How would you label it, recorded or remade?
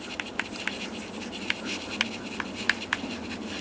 recorded